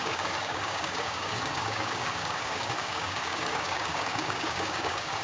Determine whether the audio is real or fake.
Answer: fake